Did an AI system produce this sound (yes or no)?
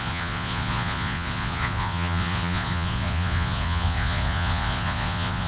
yes